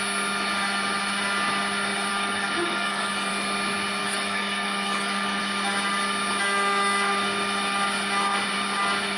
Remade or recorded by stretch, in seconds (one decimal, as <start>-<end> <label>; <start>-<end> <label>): 0.0-2.1 recorded; 2.1-3.3 remade; 3.3-4.0 recorded; 4.0-5.4 remade; 5.4-9.2 recorded